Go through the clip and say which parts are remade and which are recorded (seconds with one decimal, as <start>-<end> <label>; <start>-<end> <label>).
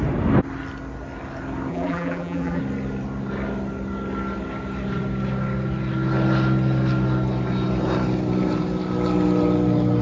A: 0.0-1.7 recorded; 1.7-2.6 remade; 2.6-10.0 recorded